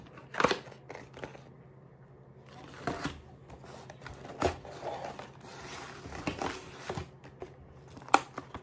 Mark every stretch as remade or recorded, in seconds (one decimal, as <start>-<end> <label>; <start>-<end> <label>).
0.0-8.6 recorded